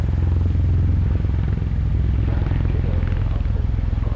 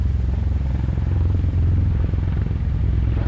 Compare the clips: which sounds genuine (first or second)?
first